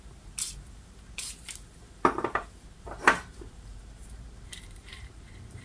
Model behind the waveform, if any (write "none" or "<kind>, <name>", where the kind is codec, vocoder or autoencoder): vocoder, BigVGAN v2